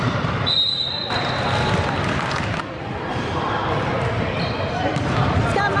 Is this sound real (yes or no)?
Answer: no